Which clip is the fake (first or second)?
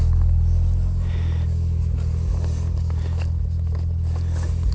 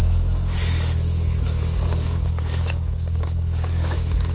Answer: second